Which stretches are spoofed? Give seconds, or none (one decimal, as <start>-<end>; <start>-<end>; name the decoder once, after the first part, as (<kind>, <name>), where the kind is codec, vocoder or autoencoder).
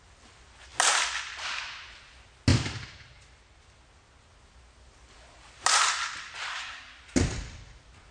6.5-7.0 (codec, SNAC)